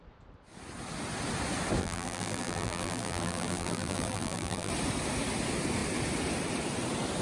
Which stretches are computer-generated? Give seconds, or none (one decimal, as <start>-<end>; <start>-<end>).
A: 1.8-4.7